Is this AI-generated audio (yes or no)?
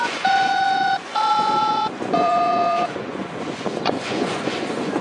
yes